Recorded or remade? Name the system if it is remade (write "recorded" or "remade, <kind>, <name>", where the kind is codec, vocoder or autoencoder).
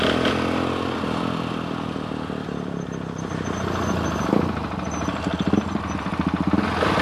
recorded